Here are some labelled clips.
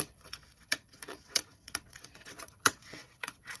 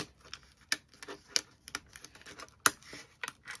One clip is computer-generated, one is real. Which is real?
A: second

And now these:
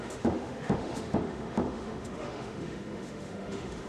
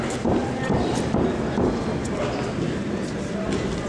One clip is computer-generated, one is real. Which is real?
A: second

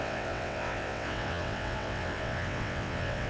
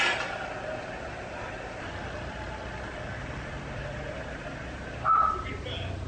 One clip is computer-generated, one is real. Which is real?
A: second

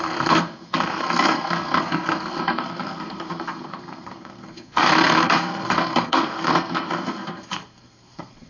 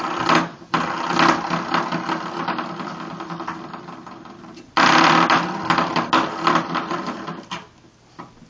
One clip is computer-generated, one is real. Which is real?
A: second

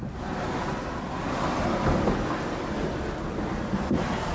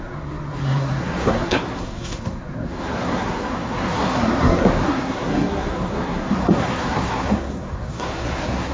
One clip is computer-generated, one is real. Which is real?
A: first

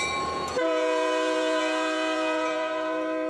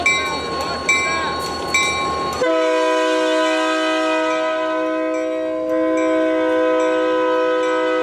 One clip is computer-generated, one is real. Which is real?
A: second